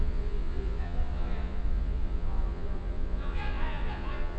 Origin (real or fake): fake